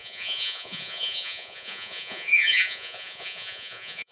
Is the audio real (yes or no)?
no